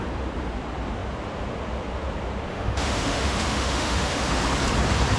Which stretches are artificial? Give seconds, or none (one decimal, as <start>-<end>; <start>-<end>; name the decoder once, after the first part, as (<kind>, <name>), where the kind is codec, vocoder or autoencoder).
2.5-4.4 (autoencoder, DAC-VAE)